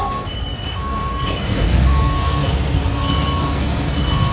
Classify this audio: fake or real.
fake